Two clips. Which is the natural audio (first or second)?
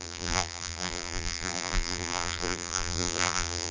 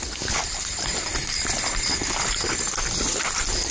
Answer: second